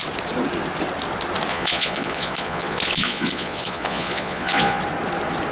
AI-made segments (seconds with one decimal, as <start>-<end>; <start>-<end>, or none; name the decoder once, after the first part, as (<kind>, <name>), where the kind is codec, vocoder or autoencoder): 1.5-4.8 (vocoder, Vocos)